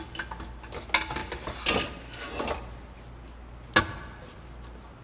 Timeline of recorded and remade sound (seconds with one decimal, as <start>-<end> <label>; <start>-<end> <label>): 0.0-5.0 recorded